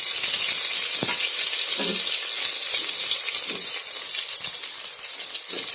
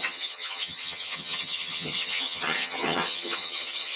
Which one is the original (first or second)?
first